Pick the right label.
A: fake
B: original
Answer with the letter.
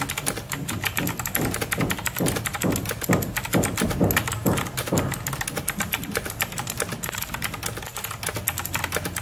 B